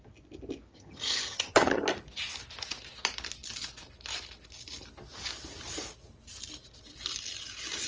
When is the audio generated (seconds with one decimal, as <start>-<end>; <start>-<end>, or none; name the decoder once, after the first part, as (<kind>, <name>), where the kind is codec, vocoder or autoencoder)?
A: 0.7-1.8 (vocoder, HiFi-GAN)